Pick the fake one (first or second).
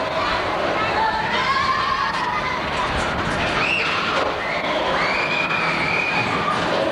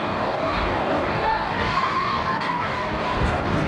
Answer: second